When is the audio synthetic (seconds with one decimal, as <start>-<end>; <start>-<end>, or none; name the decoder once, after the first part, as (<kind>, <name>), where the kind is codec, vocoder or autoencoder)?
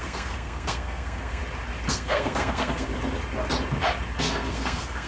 0.0-1.4 (codec, SNAC); 1.9-2.9; 4.2-5.1